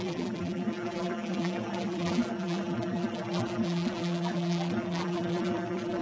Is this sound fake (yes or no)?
yes